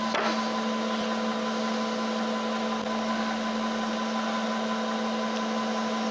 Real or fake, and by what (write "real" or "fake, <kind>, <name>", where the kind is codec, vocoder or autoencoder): real